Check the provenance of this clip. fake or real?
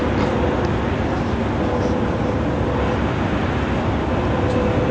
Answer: real